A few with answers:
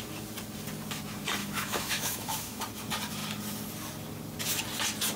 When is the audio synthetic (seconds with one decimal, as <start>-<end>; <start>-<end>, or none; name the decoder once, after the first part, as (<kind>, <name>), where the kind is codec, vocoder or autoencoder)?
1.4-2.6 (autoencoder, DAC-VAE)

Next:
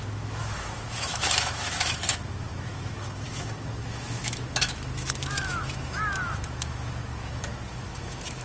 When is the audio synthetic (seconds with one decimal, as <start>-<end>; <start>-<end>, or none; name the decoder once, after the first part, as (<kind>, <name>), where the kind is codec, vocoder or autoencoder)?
0.0-8.4 (autoencoder, DAC-VAE)

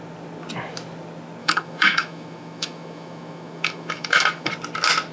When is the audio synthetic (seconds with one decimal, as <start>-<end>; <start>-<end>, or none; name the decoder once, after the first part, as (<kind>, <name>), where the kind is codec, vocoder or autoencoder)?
1.4-4.5 (autoencoder, DAC-VAE)

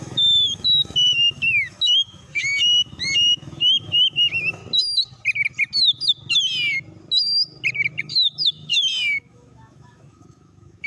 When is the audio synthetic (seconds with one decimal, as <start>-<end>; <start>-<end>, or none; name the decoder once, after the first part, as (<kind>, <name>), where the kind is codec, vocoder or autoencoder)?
0.0-4.6 (autoencoder, DAC-VAE); 8.0-10.9